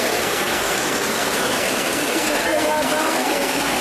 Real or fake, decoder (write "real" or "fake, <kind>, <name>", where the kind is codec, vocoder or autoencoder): fake, codec, SNAC